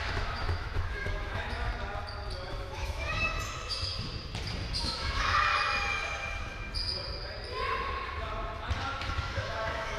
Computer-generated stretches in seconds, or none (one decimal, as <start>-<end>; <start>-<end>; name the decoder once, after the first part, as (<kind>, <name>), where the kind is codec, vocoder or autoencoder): 0.0-1.7 (autoencoder, DAC-VAE); 2.5-3.9; 4.8-5.5; 9.0-10.0